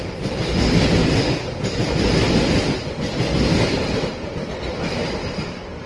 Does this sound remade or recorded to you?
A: recorded